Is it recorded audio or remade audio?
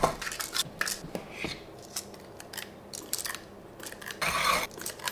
remade